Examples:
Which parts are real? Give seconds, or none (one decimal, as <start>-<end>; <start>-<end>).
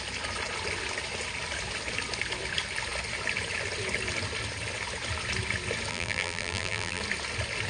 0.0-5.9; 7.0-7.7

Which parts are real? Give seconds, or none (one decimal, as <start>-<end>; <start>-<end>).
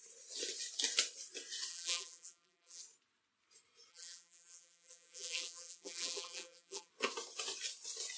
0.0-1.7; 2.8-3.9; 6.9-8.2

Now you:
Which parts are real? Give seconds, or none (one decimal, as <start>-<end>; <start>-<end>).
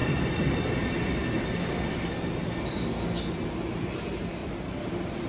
0.0-3.2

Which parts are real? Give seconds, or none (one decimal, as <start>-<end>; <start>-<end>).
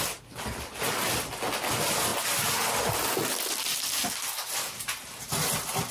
0.0-5.9